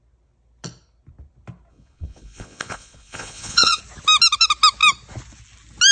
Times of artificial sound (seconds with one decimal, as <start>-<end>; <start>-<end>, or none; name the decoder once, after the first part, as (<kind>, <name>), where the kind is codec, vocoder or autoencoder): 1.7-3.8 (vocoder, Vocos)